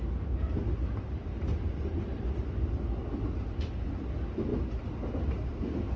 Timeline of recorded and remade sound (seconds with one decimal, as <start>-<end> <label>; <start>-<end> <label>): 0.0-6.0 recorded